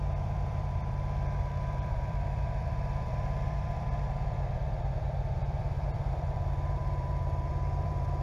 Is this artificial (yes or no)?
yes